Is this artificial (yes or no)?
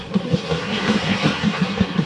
yes